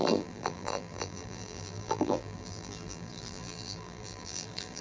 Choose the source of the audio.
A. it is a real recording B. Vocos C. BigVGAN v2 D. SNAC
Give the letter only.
C